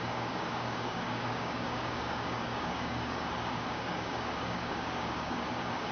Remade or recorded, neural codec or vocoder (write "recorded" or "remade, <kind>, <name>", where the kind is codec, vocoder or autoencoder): remade, codec, DAC